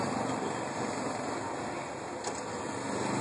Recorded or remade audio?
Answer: recorded